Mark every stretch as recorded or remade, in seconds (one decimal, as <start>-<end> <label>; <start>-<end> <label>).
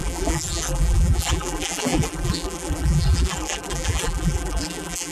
0.0-5.1 remade